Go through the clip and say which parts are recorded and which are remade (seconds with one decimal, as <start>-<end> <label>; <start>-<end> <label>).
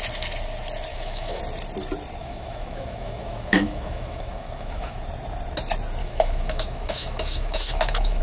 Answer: 0.0-0.9 recorded; 0.9-1.4 remade; 1.4-2.2 recorded; 2.2-5.0 remade; 5.0-6.0 recorded; 6.0-8.2 remade